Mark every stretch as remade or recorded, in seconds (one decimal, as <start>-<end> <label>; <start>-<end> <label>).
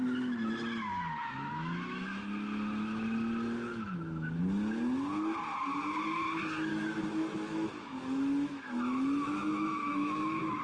0.0-1.3 recorded; 1.3-2.2 remade; 2.2-3.7 recorded; 3.7-4.4 remade; 4.4-6.7 recorded; 6.7-10.6 remade